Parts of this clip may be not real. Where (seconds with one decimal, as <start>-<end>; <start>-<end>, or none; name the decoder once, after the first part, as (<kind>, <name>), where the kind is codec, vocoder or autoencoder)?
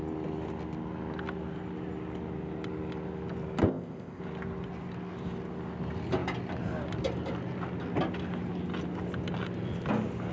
3.6-4.2 (codec, ZipCodec)